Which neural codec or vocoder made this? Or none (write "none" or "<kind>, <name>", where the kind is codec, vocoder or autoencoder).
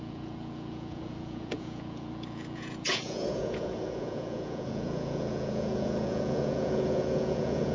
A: vocoder, Vocos